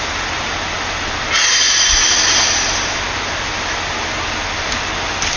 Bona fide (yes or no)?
yes